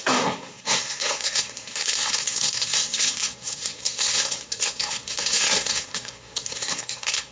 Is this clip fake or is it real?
fake